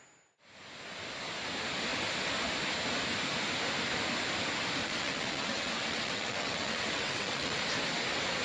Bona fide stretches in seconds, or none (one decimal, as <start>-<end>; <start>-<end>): 0.0-4.8; 7.6-8.4